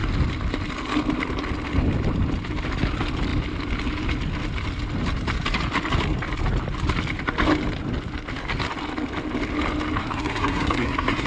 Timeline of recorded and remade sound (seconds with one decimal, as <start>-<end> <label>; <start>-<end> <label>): 0.0-10.0 recorded; 10.0-11.3 remade